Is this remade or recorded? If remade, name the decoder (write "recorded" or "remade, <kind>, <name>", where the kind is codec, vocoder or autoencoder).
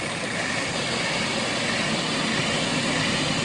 recorded